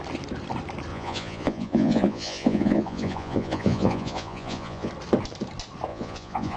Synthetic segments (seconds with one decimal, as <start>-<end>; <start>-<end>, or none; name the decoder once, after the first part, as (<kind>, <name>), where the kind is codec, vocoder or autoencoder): 0.9-4.9 (vocoder, Vocos); 5.9-6.6